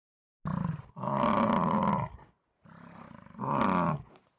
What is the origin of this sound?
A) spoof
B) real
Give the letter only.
B